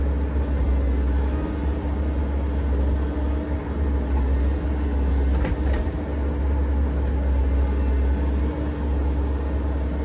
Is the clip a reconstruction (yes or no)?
no